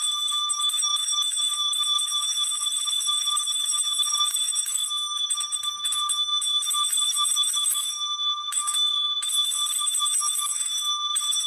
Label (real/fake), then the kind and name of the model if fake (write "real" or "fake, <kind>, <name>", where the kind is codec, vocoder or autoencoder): fake, autoencoder, DAC-VAE